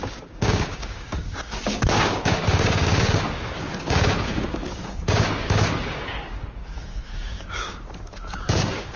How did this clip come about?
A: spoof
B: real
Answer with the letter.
A